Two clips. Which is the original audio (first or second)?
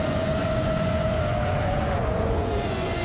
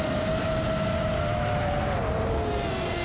second